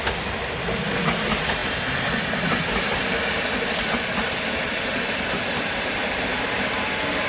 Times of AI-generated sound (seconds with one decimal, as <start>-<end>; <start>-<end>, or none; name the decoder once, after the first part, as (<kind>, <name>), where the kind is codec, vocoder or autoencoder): none